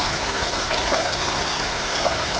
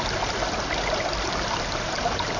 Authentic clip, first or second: second